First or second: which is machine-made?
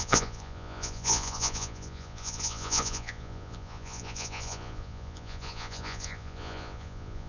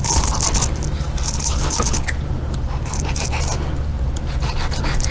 first